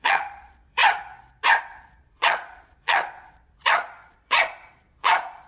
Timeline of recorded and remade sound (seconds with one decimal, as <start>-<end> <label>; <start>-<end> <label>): 0.0-0.8 remade; 0.8-1.6 recorded; 1.6-5.5 remade